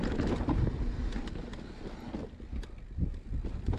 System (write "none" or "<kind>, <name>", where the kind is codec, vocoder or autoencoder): none